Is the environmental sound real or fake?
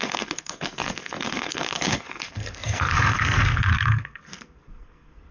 fake